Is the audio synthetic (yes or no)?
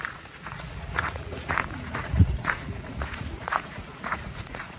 yes